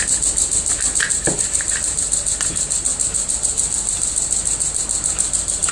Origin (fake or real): real